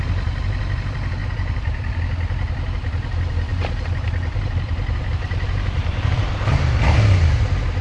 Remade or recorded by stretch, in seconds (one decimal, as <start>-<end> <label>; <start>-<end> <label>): 0.0-1.2 recorded; 1.2-1.9 remade; 1.9-3.5 recorded; 3.5-7.0 remade; 7.0-7.8 recorded